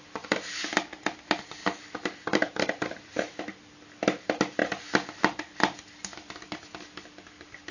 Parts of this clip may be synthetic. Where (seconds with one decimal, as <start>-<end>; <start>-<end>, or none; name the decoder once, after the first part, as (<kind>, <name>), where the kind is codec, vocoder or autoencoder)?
1.6-3.4 (vocoder, BigVGAN v2)